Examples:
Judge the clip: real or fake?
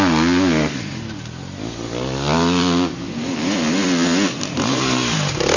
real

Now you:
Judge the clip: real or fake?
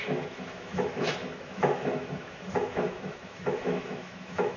fake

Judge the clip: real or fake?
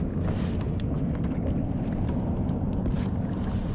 real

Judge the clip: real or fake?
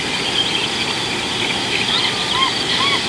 real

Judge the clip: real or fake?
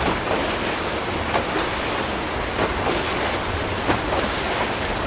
real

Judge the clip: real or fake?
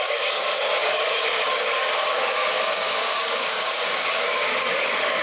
fake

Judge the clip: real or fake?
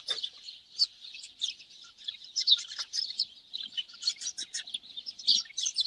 real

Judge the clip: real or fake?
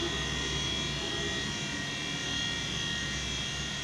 real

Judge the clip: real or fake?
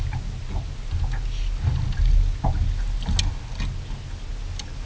real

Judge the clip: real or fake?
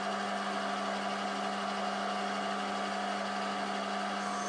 real